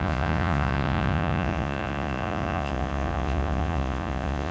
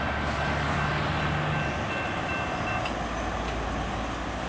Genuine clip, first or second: second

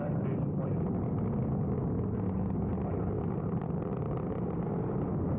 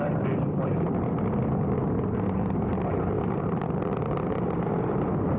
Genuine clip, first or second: first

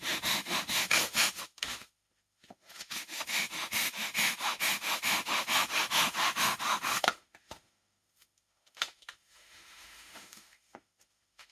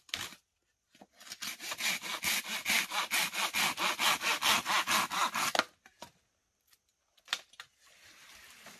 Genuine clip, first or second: second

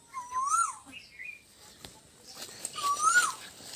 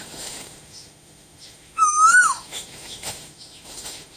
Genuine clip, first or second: first